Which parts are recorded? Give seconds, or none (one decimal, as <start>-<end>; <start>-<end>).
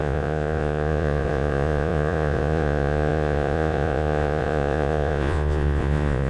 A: none